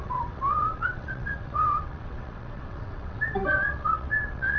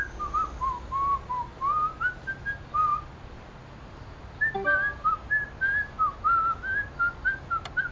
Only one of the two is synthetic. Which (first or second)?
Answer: first